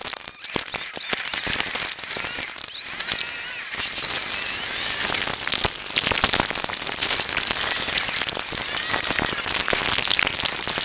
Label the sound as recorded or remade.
recorded